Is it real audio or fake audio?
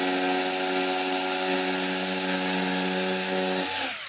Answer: real